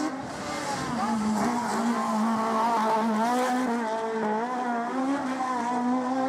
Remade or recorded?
recorded